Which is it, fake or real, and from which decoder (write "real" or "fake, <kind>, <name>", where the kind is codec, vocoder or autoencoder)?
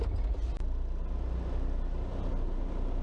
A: real